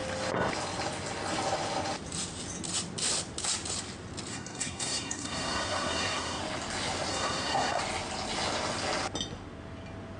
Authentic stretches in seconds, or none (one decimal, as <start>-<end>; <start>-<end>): 0.0-4.3; 6.4-7.1; 7.8-10.2